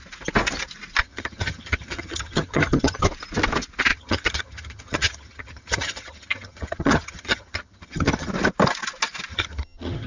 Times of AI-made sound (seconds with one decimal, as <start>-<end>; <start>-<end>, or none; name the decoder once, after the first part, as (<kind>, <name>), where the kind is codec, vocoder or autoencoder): 1.0-3.0 (vocoder, HiFi-GAN); 3.9-8.3; 9.3-10.1